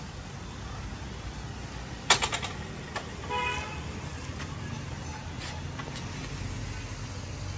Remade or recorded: recorded